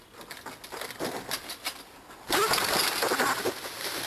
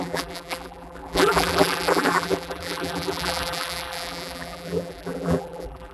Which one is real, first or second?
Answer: first